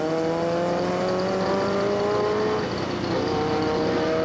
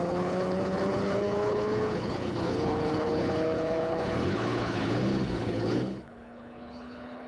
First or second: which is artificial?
second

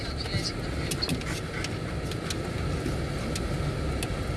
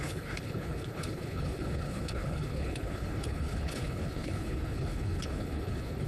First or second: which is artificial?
second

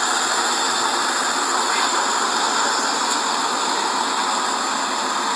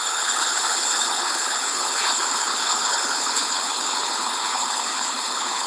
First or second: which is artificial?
second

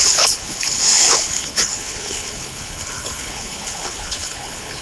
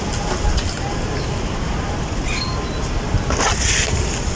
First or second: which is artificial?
first